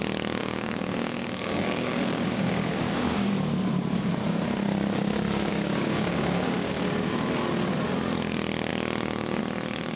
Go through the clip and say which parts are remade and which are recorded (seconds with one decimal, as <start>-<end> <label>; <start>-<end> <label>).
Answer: 0.0-0.4 recorded; 0.4-3.3 remade; 3.3-5.5 recorded; 5.5-6.7 remade; 6.7-10.0 recorded